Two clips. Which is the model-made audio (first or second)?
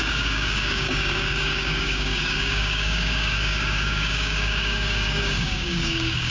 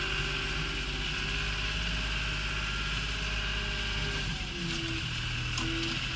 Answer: first